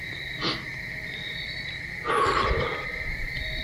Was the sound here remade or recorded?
recorded